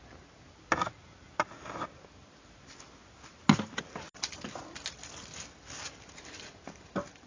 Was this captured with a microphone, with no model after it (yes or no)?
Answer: yes